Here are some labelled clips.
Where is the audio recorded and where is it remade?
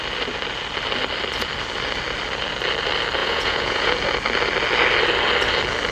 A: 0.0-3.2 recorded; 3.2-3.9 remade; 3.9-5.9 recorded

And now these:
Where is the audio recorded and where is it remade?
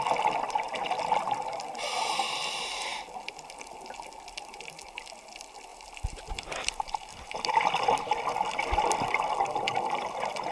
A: 0.0-5.7 recorded; 5.7-7.5 remade; 7.5-10.5 recorded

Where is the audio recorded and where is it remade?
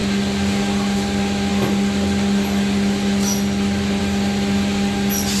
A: 0.0-5.4 recorded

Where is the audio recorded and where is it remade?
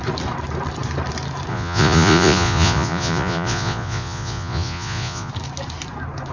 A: 0.0-1.5 recorded; 1.5-5.3 remade; 5.3-6.3 recorded